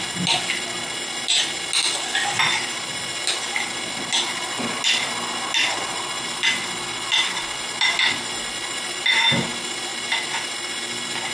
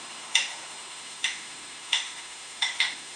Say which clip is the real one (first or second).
first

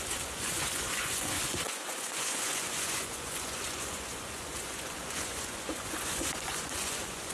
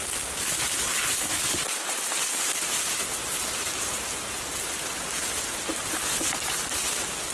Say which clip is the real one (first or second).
second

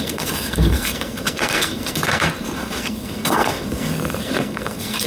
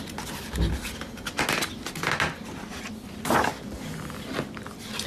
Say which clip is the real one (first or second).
second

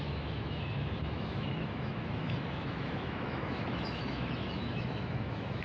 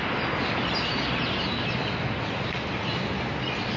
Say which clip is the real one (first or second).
second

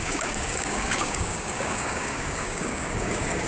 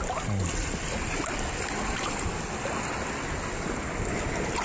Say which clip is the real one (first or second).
second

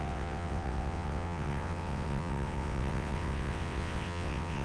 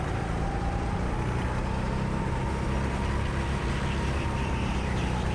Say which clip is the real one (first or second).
second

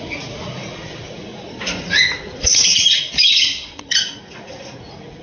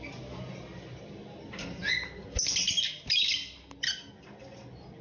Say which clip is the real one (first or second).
second